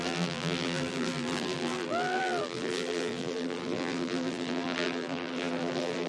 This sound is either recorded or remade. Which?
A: remade